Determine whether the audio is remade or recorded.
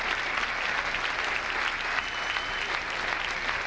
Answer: recorded